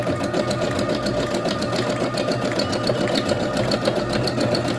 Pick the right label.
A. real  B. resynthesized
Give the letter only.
A